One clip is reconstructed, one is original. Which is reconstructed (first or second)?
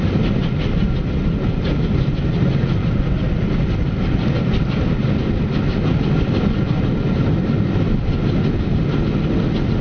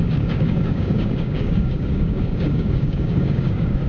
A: second